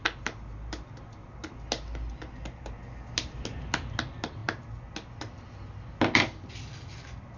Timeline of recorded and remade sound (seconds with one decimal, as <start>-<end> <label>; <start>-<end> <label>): 0.0-7.4 recorded